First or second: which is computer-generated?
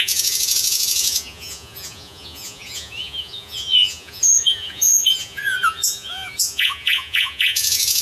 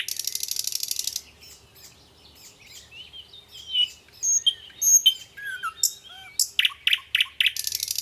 first